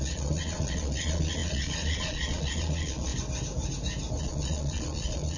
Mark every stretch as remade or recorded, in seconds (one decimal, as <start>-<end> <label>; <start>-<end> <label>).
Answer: 0.0-3.1 remade; 3.1-4.2 recorded; 4.2-5.4 remade